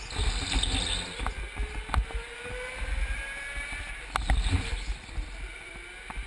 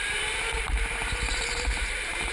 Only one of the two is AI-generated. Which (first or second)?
second